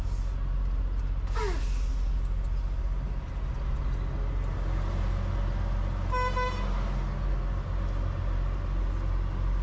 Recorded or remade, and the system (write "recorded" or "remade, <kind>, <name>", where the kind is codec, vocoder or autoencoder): recorded